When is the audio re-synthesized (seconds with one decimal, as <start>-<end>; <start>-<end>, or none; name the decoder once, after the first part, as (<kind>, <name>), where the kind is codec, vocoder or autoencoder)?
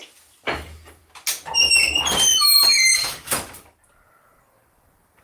2.9-5.2 (vocoder, BigVGAN v2)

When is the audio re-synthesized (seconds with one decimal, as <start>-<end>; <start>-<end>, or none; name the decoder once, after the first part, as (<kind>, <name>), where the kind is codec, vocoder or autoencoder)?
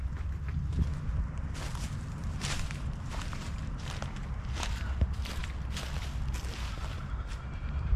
2.2-5.4 (vocoder, BigVGAN v2); 6.9-8.0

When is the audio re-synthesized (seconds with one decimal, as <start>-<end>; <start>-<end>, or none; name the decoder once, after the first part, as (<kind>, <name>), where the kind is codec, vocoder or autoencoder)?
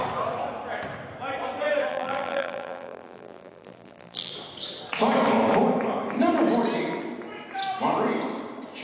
1.9-4.3 (vocoder, BigVGAN v2)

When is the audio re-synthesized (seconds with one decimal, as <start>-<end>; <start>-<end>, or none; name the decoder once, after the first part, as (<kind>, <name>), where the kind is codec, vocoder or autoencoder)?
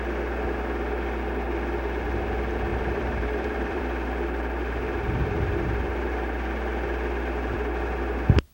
2.7-3.8 (vocoder, BigVGAN v2)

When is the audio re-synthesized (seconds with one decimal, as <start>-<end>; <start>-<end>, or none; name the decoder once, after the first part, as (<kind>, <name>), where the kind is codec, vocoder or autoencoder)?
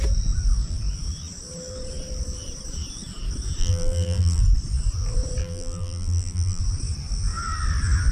3.6-4.4 (vocoder, BigVGAN v2); 5.4-6.6